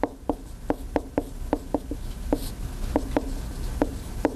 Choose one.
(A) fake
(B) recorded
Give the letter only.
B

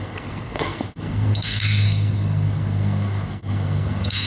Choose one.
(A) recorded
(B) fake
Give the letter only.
B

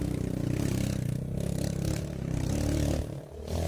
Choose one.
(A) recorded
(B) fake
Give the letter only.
B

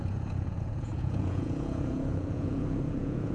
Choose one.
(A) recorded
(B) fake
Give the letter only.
B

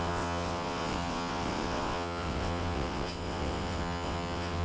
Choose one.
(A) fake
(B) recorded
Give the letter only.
A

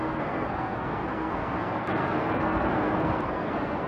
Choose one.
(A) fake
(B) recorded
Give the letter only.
A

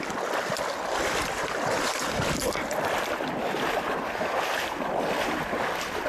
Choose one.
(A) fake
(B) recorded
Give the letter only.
B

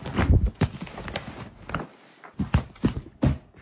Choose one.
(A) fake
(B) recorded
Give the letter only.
B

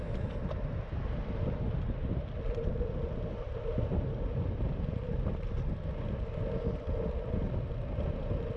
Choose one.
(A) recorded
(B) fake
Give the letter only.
A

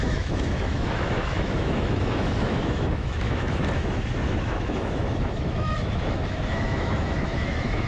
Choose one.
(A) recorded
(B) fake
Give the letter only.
B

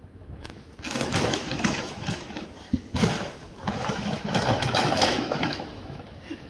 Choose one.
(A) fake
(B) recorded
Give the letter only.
A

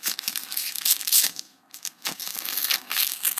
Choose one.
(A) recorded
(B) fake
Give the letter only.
B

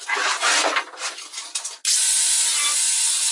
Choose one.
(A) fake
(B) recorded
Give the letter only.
B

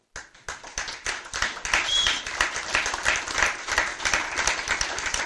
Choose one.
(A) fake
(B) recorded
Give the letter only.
B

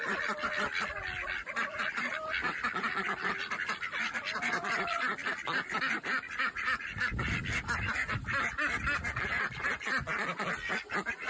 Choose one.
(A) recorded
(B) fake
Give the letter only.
A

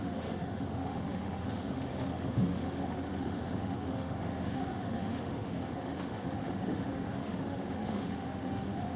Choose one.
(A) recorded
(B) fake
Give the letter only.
B